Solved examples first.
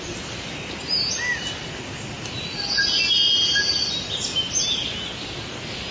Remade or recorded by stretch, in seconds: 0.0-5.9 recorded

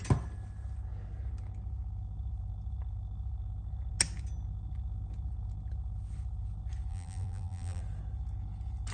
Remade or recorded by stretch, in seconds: 0.0-6.9 recorded; 6.9-7.8 remade; 7.8-8.9 recorded

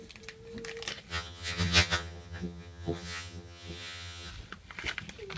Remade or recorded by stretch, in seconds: 0.0-1.1 recorded; 1.1-4.3 remade; 4.3-5.4 recorded

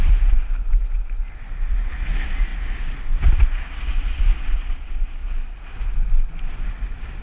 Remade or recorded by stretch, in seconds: 0.0-7.2 recorded

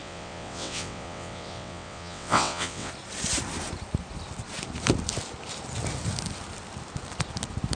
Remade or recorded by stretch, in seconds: 0.0-2.9 remade; 2.9-7.7 recorded

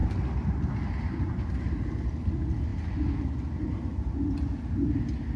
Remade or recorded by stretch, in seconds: 0.0-5.4 recorded

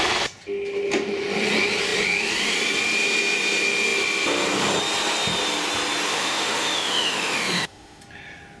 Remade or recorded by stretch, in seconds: 0.0-6.1 recorded; 6.1-8.0 remade; 8.0-8.6 recorded

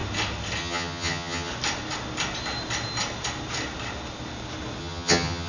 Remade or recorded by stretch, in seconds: 0.0-0.6 recorded; 0.6-1.5 remade; 1.5-4.8 recorded; 4.8-5.5 remade